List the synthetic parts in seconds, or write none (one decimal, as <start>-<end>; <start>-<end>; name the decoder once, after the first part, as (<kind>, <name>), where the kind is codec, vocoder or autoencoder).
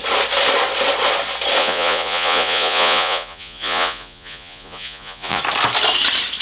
1.6-5.4 (vocoder, Vocos)